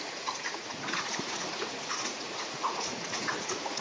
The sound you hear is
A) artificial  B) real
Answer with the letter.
A